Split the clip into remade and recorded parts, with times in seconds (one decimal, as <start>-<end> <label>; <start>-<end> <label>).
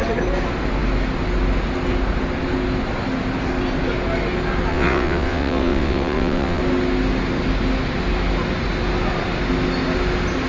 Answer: 0.0-4.7 recorded; 4.7-6.6 remade; 6.6-10.5 recorded